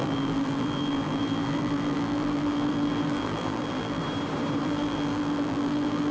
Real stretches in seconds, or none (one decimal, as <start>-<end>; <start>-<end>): 4.0-4.6